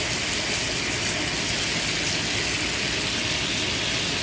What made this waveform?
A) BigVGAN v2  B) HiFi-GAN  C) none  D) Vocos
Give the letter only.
C